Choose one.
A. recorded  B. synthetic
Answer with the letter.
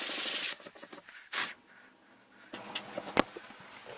A